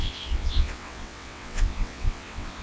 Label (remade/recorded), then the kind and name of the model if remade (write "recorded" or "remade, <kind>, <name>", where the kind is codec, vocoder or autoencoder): remade, vocoder, WaveNeXt